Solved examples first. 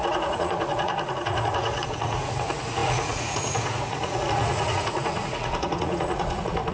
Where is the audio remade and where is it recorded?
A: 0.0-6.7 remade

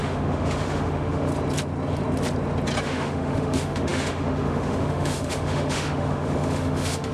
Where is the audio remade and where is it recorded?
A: 0.0-1.3 remade; 1.3-2.8 recorded; 2.8-7.1 remade